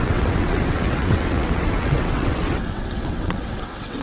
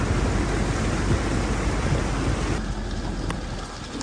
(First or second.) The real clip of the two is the second